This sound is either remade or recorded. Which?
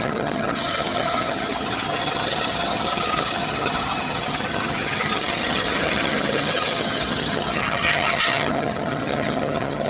remade